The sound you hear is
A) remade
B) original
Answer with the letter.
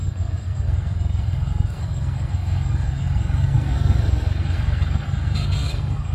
A